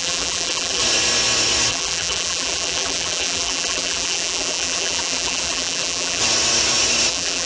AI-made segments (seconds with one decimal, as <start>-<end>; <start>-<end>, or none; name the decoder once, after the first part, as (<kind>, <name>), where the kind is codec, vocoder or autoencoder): 0.0-0.8 (vocoder, BigVGAN v2); 1.7-6.2; 7.1-7.5